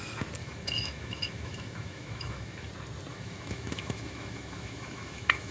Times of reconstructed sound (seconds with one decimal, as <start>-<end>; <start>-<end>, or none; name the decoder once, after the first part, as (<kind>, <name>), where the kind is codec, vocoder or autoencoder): 0.4-2.7 (autoencoder, DAC-VAE); 3.1-5.5